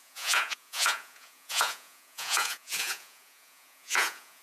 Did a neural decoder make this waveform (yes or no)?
yes